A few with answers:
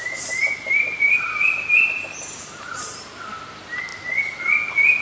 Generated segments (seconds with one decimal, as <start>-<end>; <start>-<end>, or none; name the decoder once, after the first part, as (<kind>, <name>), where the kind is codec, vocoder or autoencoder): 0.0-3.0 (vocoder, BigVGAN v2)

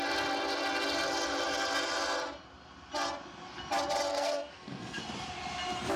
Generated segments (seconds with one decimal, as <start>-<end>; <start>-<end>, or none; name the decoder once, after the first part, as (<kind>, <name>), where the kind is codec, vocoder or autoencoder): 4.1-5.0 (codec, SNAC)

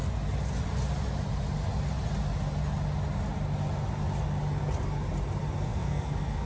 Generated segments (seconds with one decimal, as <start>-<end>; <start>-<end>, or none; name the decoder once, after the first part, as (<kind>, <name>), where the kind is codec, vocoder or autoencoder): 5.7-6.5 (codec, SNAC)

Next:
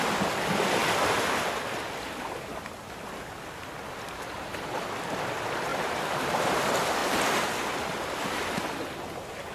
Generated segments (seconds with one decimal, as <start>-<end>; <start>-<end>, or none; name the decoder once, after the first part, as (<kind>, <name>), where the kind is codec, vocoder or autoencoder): 5.7-6.6 (vocoder, BigVGAN v2)

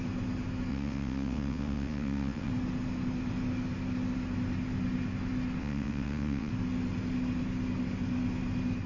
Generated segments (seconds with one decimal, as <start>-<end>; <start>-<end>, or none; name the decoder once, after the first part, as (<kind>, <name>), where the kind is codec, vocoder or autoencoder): 0.7-2.5 (vocoder, WaveNeXt); 5.6-6.5

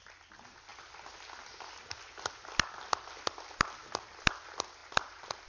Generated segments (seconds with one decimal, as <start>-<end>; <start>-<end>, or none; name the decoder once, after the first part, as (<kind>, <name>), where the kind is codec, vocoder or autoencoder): none

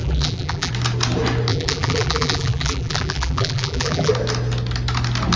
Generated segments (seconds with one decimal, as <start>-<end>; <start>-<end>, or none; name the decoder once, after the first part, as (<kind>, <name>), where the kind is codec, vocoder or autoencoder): 0.0-0.7 (vocoder, BigVGAN v2); 1.5-4.1